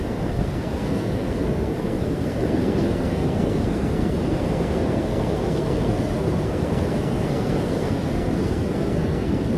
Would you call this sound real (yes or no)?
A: no